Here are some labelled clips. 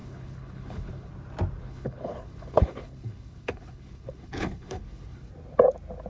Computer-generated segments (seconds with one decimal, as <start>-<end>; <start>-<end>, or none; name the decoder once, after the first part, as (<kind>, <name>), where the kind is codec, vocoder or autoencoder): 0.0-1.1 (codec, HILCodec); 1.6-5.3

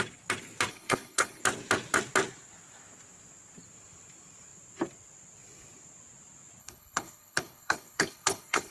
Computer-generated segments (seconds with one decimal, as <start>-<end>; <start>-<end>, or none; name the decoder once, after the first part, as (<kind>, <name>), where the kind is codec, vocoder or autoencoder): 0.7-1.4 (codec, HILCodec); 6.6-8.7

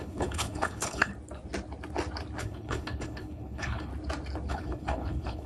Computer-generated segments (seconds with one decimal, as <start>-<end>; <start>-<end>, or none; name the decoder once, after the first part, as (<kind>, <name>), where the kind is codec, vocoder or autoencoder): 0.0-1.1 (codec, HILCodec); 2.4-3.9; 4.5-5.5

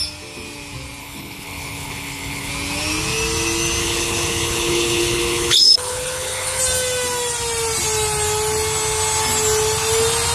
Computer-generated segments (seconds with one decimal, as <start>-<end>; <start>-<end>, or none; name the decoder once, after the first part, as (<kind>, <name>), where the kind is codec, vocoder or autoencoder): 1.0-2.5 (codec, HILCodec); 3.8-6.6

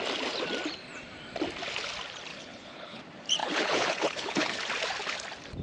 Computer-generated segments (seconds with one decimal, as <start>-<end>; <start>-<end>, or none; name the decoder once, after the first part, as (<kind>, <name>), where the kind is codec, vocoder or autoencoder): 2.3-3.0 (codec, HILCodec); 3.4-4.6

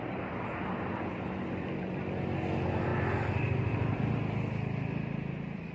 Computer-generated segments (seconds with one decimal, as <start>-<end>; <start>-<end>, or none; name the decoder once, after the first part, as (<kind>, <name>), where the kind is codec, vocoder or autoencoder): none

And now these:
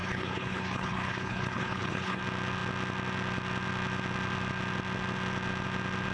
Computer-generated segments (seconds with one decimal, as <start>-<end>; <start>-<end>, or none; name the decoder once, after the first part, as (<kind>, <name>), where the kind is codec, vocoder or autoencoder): 0.0-2.2 (codec, HILCodec)